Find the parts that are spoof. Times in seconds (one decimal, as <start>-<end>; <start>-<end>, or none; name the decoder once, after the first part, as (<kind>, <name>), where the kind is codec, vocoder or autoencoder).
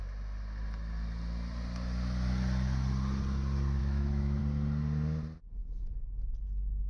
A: 3.8-4.4 (autoencoder, DAC-VAE)